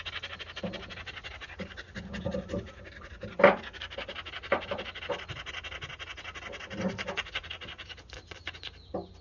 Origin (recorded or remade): recorded